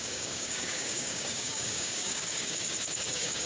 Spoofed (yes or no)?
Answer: yes